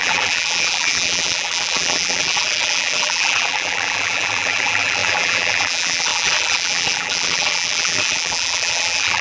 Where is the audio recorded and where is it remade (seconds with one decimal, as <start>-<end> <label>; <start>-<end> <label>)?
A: 0.0-9.2 remade